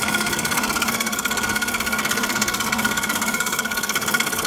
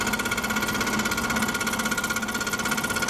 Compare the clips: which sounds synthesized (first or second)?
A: first